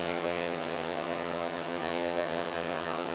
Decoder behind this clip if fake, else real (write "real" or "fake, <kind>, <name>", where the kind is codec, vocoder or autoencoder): fake, vocoder, HiFi-GAN